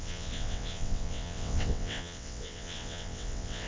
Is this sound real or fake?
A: fake